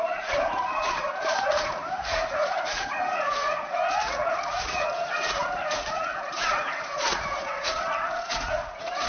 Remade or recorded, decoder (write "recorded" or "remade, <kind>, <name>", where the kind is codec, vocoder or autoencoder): remade, vocoder, Vocos